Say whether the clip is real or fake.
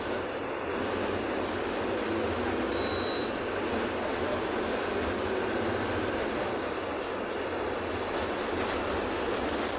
real